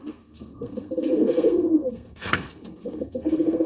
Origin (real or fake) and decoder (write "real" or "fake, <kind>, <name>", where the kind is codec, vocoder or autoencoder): fake, codec, SNAC